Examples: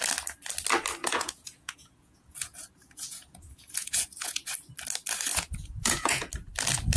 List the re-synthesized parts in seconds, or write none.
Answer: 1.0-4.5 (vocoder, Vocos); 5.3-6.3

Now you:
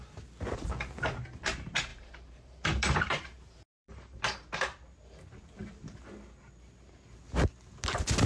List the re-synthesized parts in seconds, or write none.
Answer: 1.9-4.2 (vocoder, BigVGAN v2); 5.6-6.1

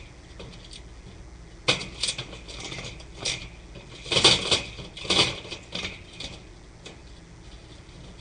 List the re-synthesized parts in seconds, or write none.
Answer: none

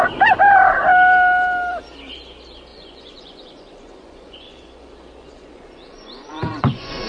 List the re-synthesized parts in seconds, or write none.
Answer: 2.7-7.1 (vocoder, Vocos)

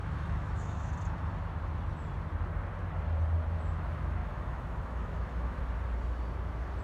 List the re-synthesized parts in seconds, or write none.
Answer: 0.0-0.9 (autoencoder, DAC-VAE); 4.2-5.6

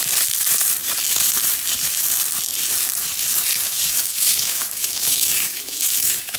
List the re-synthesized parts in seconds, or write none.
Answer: 3.5-6.4 (codec, DAC)

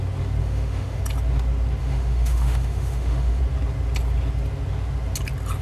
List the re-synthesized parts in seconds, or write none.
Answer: 0.4-1.0 (autoencoder, DAC-VAE); 1.8-3.4